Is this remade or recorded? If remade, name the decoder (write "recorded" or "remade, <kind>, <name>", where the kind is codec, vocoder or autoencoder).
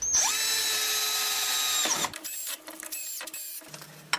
recorded